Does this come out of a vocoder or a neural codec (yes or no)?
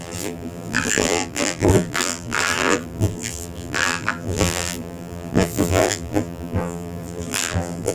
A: yes